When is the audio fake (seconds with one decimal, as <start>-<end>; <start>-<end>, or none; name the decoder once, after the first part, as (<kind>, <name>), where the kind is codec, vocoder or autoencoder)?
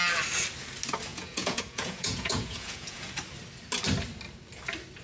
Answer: 1.1-3.1 (vocoder, Vocos)